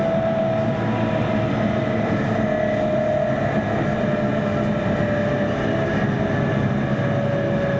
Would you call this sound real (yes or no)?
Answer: yes